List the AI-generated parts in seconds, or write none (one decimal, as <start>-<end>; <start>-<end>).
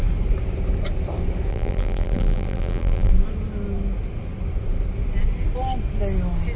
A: 1.5-3.1